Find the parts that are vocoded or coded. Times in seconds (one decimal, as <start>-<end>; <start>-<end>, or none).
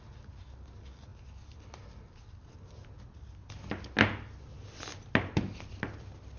none